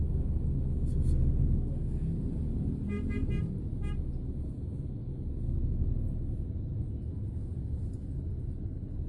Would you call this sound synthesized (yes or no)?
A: no